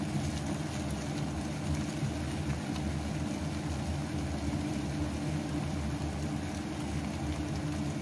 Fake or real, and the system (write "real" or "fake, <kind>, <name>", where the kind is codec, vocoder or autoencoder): real